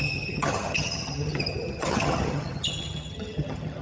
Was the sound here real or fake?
fake